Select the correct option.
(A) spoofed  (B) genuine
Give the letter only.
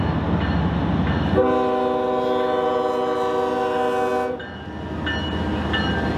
B